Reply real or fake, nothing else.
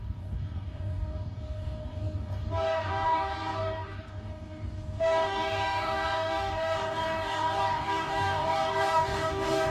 fake